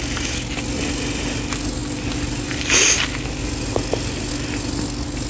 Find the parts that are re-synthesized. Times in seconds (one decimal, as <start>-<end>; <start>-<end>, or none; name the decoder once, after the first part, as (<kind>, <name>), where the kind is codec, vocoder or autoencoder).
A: none